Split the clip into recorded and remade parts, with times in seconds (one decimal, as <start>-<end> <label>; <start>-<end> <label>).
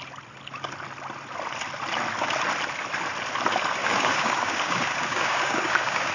0.0-3.8 recorded; 3.8-6.1 remade